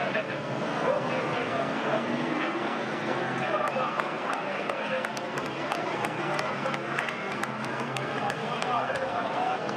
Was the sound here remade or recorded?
remade